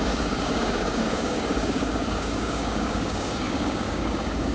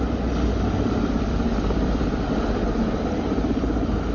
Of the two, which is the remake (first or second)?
first